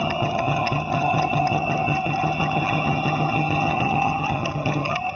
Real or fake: fake